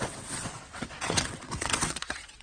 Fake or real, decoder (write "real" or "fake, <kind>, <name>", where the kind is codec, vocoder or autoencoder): fake, vocoder, WaveNeXt